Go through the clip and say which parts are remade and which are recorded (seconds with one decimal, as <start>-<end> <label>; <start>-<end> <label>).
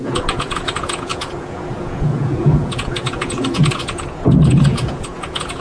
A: 0.0-5.6 remade